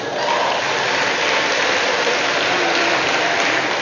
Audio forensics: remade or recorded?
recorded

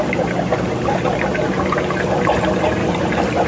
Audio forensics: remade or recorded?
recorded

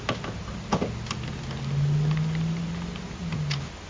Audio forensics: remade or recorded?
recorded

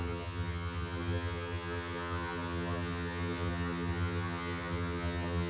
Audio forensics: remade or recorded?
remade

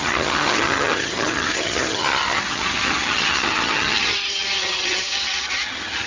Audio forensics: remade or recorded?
remade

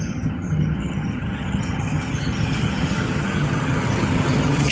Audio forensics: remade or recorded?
remade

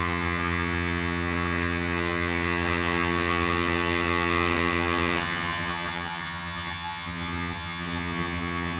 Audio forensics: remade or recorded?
remade